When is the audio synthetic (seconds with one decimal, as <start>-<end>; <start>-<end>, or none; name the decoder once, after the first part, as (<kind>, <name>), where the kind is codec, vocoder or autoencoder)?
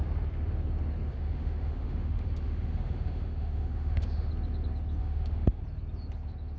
1.1-4.3 (autoencoder, DAC-VAE); 5.0-5.6